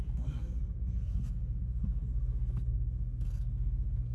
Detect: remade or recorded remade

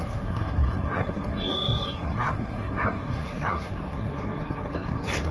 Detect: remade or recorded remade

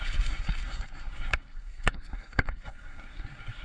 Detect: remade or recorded remade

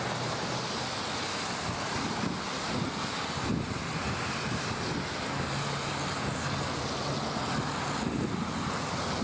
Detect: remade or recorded recorded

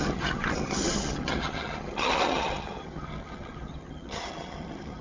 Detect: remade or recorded remade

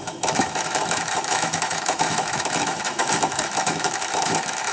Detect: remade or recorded remade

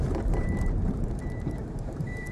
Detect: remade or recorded remade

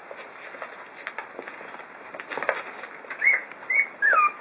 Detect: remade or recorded recorded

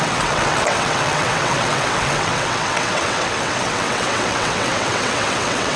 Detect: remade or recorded remade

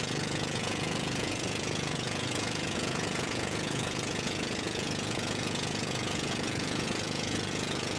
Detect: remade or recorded remade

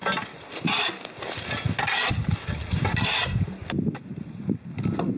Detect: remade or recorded recorded